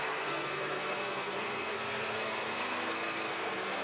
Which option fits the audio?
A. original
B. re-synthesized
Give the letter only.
B